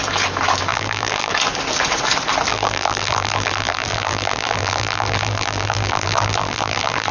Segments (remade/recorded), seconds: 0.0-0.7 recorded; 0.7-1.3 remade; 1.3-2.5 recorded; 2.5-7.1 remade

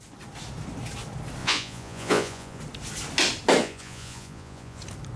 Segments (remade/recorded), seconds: 0.0-1.4 recorded; 1.4-2.6 remade; 2.6-3.6 recorded; 3.6-4.8 remade; 4.8-5.2 recorded

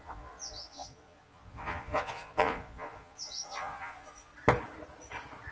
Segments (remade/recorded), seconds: 0.0-4.3 remade; 4.3-5.5 recorded

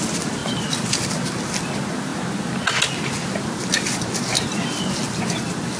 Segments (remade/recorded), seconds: 0.0-5.8 recorded

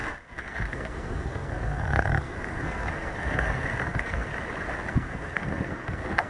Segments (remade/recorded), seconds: 0.0-4.3 remade; 4.3-4.9 recorded; 4.9-6.3 remade

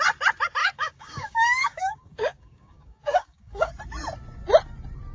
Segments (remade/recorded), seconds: 0.0-0.6 recorded; 0.6-3.7 remade; 3.7-5.1 recorded

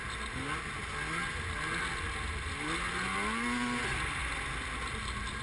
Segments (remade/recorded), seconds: 0.0-5.4 recorded

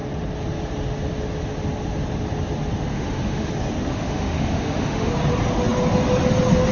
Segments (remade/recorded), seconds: 0.0-2.9 recorded; 2.9-3.5 remade; 3.5-3.9 recorded; 3.9-5.1 remade; 5.1-6.7 recorded